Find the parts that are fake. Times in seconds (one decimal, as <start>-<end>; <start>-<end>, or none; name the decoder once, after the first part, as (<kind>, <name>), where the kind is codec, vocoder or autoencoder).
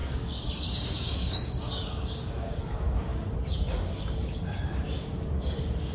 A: 0.0-5.9 (codec, DAC)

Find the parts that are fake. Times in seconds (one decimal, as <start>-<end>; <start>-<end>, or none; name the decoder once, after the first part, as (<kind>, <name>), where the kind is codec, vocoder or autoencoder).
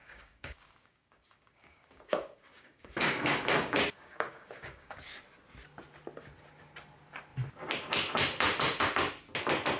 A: 0.0-5.2 (codec, DAC)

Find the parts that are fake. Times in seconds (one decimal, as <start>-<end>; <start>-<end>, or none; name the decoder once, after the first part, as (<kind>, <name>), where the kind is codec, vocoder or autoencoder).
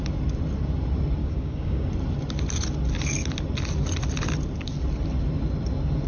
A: 1.2-1.9 (codec, DAC)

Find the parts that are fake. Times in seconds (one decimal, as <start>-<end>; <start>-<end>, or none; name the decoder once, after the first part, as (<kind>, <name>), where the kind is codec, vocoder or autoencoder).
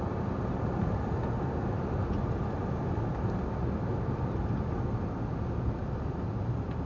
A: none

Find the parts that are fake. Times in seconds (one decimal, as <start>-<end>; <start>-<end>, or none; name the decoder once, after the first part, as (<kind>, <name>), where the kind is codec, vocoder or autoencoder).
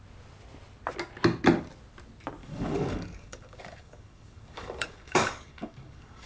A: 2.4-6.3 (codec, DAC)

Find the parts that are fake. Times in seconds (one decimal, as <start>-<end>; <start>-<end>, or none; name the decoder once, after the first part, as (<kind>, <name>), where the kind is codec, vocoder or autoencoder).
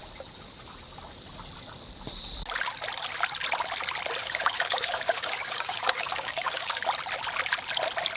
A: 4.2-6.8 (codec, DAC)